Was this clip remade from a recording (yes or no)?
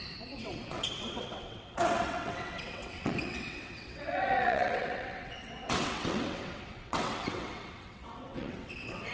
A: yes